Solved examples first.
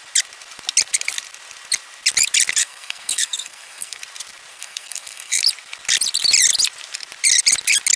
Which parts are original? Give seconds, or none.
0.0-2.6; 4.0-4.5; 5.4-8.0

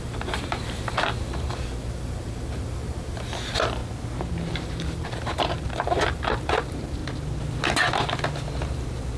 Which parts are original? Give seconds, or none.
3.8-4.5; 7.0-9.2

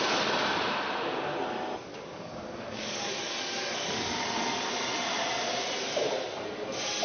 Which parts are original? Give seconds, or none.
0.0-2.1; 4.2-7.0